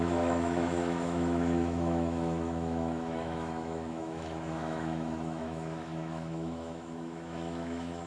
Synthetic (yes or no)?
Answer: yes